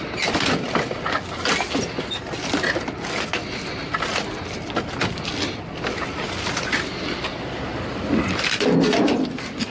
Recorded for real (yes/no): yes